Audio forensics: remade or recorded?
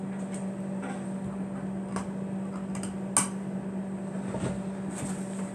recorded